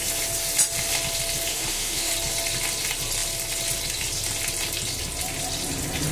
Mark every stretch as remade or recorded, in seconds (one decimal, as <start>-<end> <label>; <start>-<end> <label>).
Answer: 0.0-1.5 recorded; 1.5-2.1 remade; 2.1-6.1 recorded